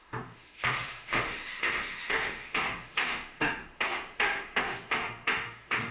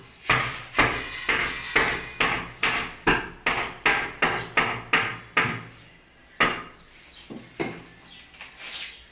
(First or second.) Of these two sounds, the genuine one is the second